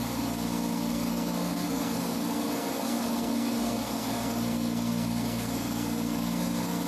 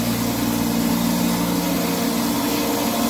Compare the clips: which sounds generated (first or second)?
first